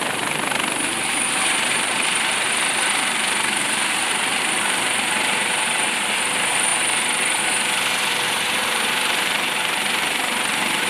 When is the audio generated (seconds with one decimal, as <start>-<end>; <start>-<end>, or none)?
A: 0.0-10.9